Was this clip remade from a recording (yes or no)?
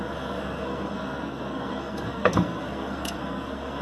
yes